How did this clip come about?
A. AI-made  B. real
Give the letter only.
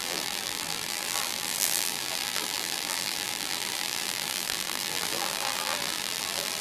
A